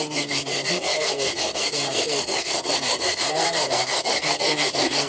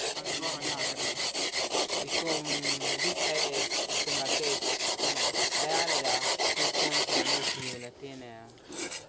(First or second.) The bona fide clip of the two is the second